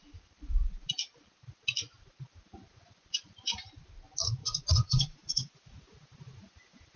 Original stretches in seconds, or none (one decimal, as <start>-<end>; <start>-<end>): 0.0-2.7; 3.6-4.4; 5.5-7.0